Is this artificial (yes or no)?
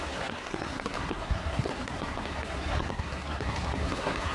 yes